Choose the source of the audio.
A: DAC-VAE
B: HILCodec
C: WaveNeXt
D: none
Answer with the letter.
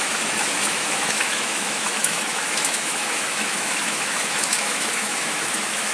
A